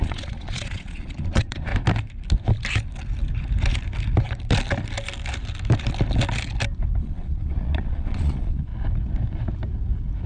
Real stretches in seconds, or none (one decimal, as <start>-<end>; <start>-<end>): 1.7-7.0; 8.7-10.3

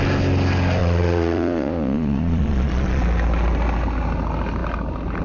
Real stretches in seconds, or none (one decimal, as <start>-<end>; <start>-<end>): 0.0-0.8; 3.0-5.2

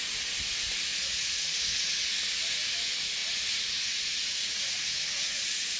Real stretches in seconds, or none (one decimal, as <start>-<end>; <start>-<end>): 0.0-0.9; 1.9-3.2

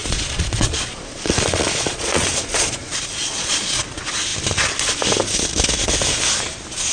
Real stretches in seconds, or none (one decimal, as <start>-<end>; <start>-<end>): 3.8-6.9

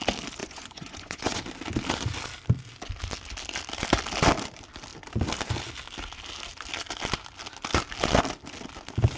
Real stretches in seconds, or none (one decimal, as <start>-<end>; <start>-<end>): 0.0-0.4; 1.4-9.2

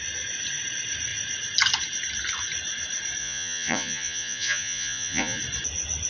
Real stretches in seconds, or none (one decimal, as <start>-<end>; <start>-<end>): 0.0-3.2; 5.4-6.1

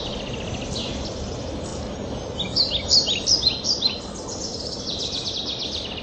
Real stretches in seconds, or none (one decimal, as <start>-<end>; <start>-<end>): 0.0-6.0